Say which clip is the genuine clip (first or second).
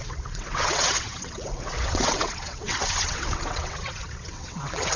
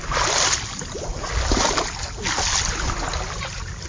second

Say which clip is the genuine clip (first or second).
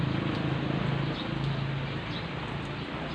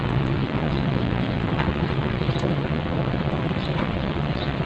first